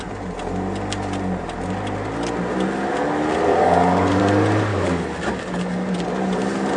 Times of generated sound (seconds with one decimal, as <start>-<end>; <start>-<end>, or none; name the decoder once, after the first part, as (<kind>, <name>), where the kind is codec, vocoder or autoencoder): 3.5-4.2 (codec, DAC); 4.7-5.9